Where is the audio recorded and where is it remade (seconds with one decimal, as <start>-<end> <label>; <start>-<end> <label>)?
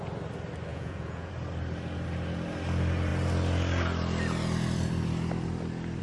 0.0-0.7 recorded; 0.7-1.3 remade; 1.3-6.0 recorded